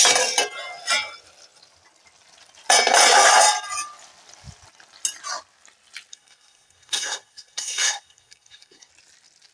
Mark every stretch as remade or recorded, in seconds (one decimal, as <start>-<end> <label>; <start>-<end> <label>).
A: 0.0-6.1 recorded; 6.1-8.9 remade; 8.9-9.5 recorded